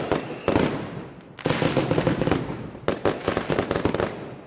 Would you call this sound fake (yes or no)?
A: no